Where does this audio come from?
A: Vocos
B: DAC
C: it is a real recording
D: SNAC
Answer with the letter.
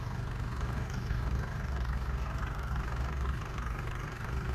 B